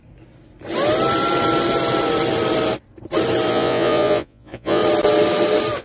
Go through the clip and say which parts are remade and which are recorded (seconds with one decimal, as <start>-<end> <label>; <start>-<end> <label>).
0.0-3.5 recorded; 3.5-4.8 remade; 4.8-5.8 recorded